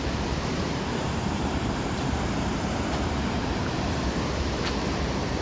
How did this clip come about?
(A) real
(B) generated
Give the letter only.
B